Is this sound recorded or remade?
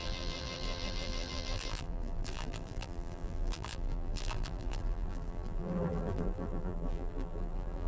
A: remade